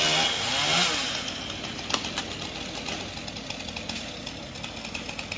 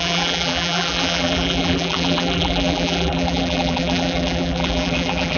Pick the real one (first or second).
first